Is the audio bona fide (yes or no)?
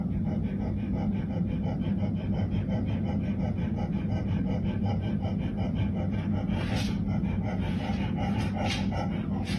yes